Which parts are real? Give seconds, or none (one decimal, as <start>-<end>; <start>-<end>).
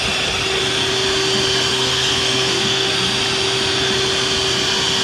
0.0-1.7; 2.9-5.0